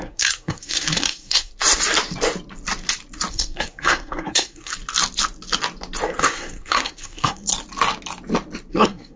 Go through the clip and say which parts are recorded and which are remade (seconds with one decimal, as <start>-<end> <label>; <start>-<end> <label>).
0.0-1.5 remade; 1.5-3.3 recorded; 3.3-4.7 remade; 4.7-6.2 recorded; 6.2-7.5 remade; 7.5-8.7 recorded; 8.7-9.2 remade